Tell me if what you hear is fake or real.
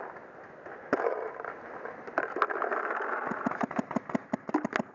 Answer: real